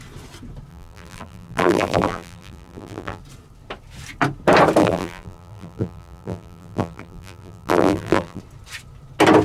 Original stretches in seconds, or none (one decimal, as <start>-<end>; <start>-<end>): 0.0-0.7; 3.2-4.8; 8.4-9.4